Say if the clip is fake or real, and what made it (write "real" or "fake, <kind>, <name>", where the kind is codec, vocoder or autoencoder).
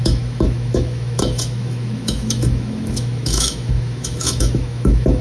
fake, autoencoder, DAC-VAE